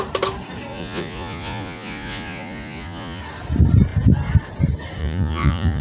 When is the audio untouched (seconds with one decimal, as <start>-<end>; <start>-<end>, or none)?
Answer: 0.0-0.7; 3.2-5.0